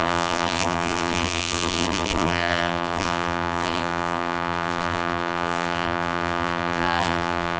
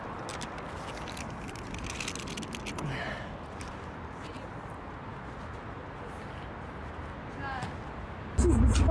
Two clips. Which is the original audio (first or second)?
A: second